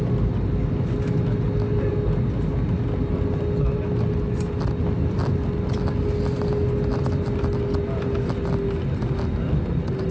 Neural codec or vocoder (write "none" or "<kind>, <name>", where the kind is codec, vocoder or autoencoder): none